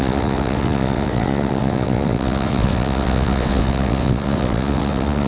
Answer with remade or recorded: remade